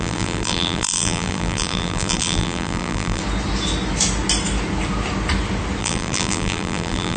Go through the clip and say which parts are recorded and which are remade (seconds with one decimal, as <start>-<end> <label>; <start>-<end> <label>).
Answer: 0.0-3.2 remade; 3.2-5.8 recorded; 5.8-7.2 remade